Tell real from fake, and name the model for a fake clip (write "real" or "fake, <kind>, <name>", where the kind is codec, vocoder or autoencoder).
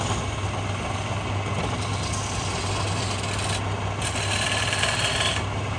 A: real